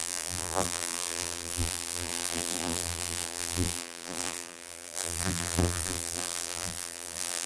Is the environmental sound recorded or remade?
remade